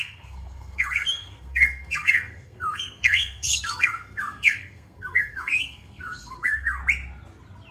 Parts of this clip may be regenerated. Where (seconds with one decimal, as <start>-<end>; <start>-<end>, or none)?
0.0-6.8